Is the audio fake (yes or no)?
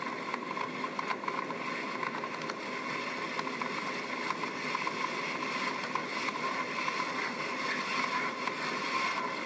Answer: no